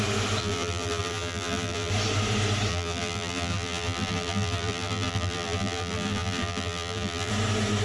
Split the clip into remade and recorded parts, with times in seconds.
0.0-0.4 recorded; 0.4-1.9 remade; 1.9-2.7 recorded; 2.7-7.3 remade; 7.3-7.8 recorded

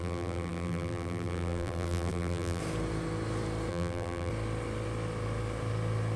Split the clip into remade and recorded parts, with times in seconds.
0.0-2.6 remade; 2.6-3.7 recorded; 3.7-4.3 remade; 4.3-6.2 recorded

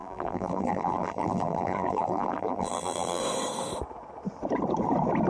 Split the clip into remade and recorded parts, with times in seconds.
0.0-3.2 remade; 3.2-5.3 recorded

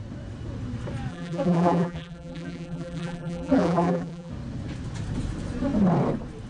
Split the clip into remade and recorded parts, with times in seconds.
0.0-1.1 recorded; 1.1-4.3 remade; 4.3-6.5 recorded

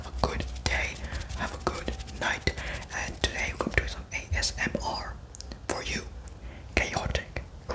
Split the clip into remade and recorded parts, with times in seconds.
0.0-7.1 recorded; 7.1-7.7 remade